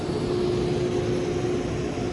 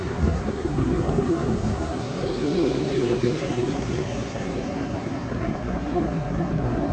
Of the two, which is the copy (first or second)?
second